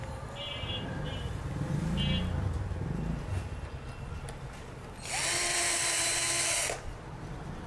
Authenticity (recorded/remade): recorded